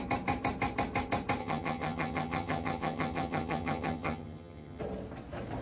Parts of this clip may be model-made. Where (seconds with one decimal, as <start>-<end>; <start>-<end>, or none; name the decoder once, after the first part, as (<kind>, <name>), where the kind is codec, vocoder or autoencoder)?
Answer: 1.4-4.8 (vocoder, HiFi-GAN)